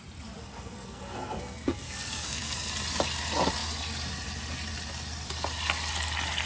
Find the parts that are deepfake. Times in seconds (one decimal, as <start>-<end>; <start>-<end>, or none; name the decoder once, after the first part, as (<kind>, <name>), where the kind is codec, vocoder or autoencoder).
0.4-2.7 (codec, SNAC)

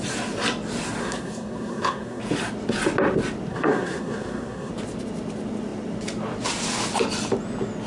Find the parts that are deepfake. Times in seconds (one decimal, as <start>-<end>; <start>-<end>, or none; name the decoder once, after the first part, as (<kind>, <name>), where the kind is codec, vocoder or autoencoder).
1.0-2.2 (codec, SNAC); 3.5-4.7

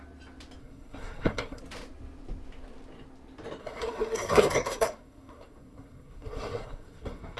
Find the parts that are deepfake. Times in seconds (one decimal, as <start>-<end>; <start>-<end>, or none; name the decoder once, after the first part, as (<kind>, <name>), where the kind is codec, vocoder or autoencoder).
0.6-1.6 (codec, SNAC); 3.6-7.4

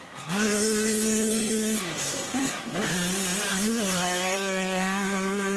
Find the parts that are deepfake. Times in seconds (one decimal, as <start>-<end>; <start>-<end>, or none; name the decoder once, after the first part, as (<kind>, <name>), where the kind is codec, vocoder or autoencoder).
0.0-2.9 (codec, SNAC); 3.5-5.6

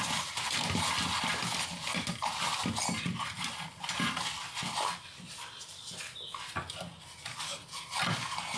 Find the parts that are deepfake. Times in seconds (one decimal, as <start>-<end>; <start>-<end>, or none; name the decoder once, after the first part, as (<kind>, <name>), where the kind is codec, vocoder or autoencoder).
none

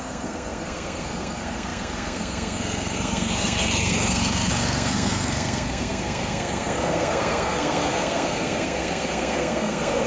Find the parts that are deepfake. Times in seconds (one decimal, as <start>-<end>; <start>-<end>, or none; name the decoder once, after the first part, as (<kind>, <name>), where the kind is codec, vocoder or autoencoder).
0.0-10.1 (codec, SNAC)